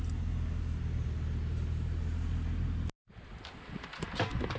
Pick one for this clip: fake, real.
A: real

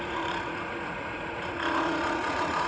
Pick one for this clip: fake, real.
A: fake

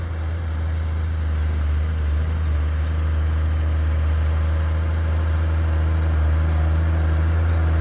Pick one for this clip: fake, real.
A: real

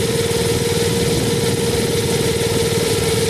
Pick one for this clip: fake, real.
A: real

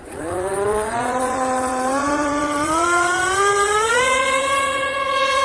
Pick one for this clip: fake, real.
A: fake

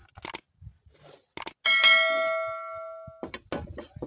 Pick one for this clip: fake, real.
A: real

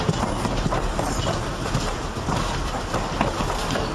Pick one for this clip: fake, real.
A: real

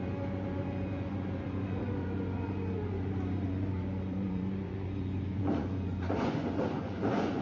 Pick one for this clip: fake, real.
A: fake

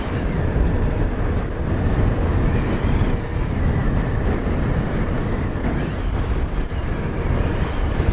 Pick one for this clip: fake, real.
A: real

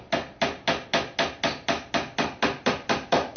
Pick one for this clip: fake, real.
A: real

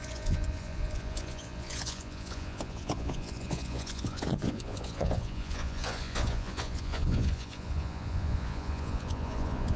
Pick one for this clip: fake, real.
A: fake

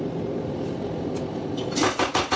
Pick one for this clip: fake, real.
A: real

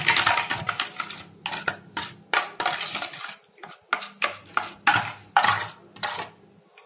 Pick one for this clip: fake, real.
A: real